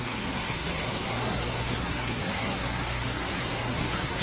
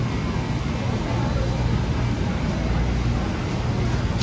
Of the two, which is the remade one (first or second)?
first